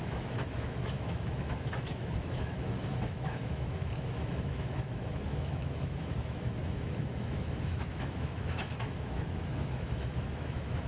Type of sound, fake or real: fake